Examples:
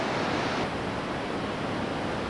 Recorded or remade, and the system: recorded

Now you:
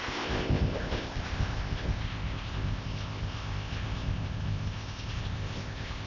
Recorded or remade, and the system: remade, codec, ZipCodec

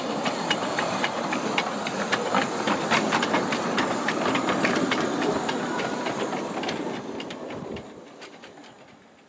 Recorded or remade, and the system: recorded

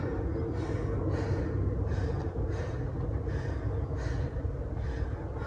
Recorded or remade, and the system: recorded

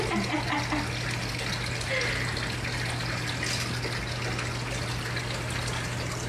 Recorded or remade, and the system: recorded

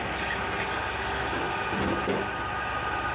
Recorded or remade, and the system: recorded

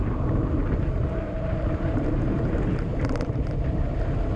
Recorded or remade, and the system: remade, vocoder, BigVGAN v2